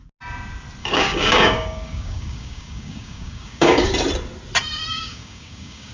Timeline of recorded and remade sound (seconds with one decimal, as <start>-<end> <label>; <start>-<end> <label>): 0.0-0.8 recorded; 0.8-3.9 remade; 3.9-4.9 recorded; 4.9-5.9 remade